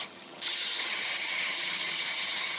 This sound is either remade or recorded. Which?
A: remade